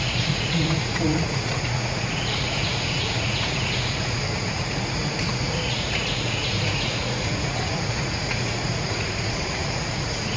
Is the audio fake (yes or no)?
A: yes